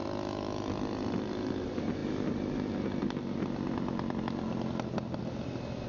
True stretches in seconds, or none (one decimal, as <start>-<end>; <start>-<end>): 0.0-5.9

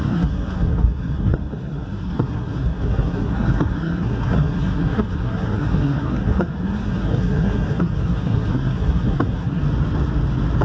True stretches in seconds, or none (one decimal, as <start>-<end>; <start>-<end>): 9.6-10.6

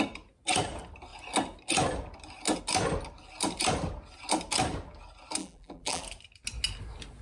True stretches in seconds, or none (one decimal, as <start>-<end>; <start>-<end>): 0.0-5.4; 6.0-7.2

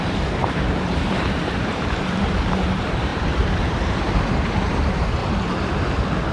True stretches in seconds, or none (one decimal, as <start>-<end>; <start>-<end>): 5.2-6.3

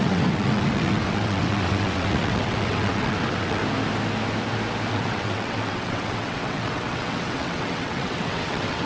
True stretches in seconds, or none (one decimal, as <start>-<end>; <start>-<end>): 3.6-4.9